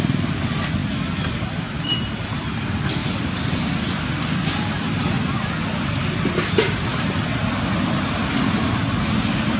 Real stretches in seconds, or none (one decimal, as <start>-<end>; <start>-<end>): 0.0-9.6